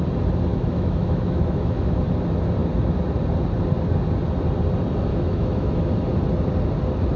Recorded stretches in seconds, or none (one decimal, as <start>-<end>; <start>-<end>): 0.0-0.5; 2.0-5.1; 5.8-7.2